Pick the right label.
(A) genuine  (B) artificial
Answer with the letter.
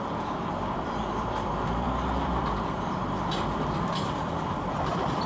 B